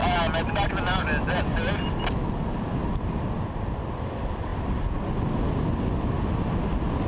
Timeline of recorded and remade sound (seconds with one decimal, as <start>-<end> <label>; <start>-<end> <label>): 0.0-7.1 recorded